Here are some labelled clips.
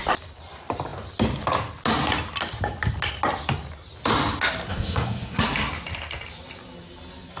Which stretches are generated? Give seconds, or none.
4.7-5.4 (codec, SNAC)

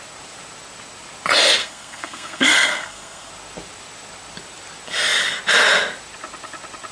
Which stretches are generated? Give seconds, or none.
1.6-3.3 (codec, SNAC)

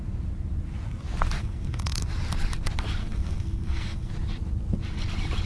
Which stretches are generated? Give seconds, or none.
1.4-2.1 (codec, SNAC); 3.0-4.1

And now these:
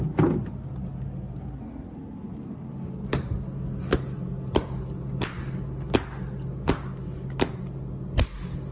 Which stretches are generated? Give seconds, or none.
none

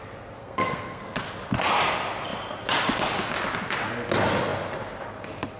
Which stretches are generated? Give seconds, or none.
0.4-1.0 (codec, SNAC)

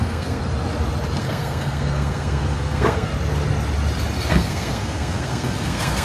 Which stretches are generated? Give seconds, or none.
0.0-0.4 (codec, SNAC); 1.2-3.1; 4.3-6.0

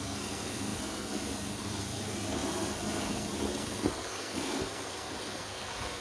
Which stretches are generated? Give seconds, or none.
0.0-6.0 (codec, SNAC)